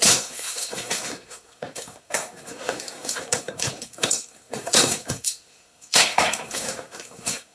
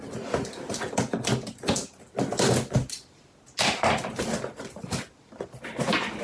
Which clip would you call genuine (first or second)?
second